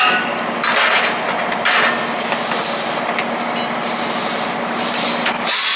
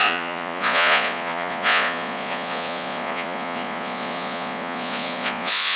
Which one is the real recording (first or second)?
first